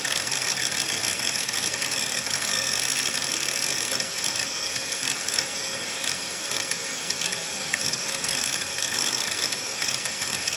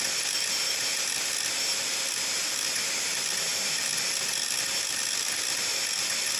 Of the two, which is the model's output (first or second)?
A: first